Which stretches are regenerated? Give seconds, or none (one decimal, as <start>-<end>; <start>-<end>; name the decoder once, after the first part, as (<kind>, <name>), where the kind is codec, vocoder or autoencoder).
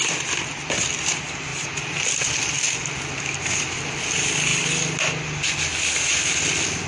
none